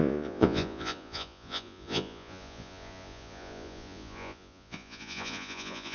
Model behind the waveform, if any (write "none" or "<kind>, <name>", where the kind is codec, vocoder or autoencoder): vocoder, Vocos